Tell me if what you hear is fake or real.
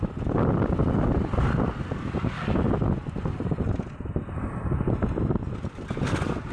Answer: real